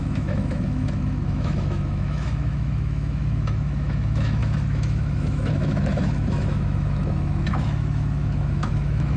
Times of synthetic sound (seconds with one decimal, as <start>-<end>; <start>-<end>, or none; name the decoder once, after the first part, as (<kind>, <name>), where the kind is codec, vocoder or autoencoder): 0.0-9.2 (autoencoder, DAC-VAE)